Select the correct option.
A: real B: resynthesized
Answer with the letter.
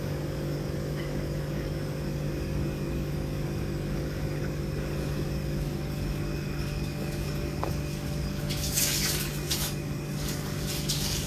B